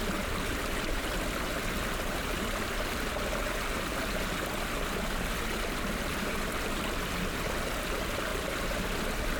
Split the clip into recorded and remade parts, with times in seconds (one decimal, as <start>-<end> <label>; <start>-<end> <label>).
0.0-8.3 recorded; 8.3-9.0 remade; 9.0-9.4 recorded